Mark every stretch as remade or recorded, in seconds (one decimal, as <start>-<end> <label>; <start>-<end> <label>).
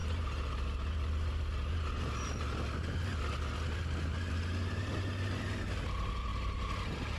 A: 0.0-6.3 recorded; 6.3-7.2 remade